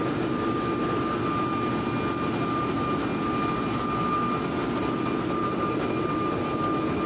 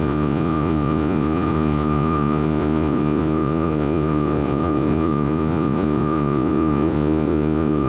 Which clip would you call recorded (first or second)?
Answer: first